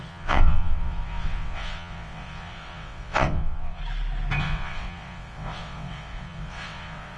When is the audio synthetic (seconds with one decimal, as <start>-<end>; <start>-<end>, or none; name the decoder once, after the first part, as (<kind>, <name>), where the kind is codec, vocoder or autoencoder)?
0.0-3.8 (vocoder, WaveNeXt); 4.4-7.2